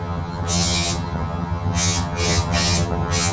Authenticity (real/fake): fake